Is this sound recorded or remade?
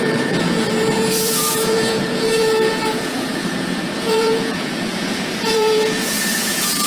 remade